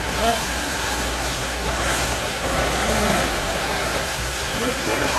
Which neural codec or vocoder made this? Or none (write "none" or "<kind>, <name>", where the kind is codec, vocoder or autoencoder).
codec, SNAC